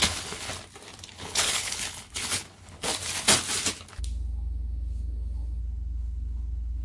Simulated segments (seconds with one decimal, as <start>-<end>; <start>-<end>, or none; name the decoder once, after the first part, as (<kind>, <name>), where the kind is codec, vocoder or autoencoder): 0.0-0.5 (codec, HILCodec); 1.1-2.9; 5.6-6.8